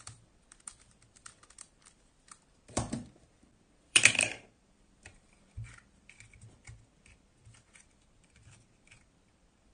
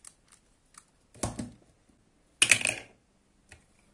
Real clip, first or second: second